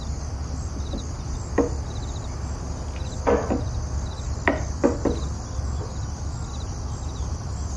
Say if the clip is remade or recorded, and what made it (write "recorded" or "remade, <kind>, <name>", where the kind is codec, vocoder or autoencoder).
recorded